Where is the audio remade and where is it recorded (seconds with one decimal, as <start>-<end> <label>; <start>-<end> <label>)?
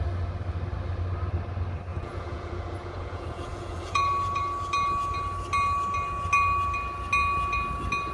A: 0.0-1.9 recorded; 1.9-4.4 remade; 4.4-8.1 recorded